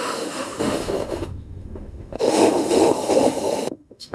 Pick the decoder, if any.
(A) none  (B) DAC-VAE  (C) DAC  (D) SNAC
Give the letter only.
B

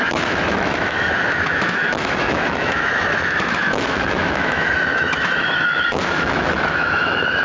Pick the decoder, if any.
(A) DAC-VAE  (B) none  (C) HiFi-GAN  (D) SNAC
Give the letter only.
A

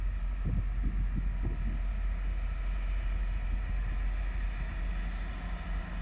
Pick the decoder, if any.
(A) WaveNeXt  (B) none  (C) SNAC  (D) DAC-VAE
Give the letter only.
B